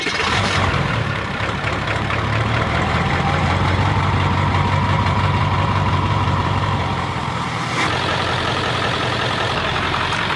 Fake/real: fake